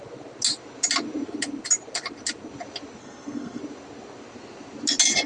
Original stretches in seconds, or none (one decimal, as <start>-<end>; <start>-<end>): 0.0-3.0; 3.6-5.3